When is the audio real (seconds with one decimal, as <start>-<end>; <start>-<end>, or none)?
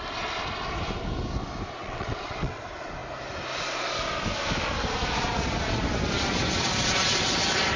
0.0-1.8; 2.6-7.8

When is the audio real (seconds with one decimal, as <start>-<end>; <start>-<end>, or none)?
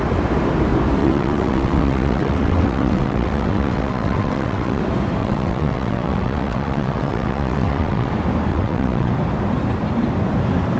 0.0-1.0; 4.8-5.2; 8.1-8.5; 9.1-10.8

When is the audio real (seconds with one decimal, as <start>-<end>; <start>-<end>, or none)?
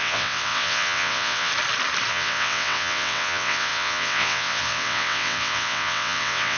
1.5-2.1